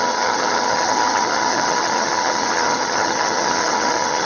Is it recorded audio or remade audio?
remade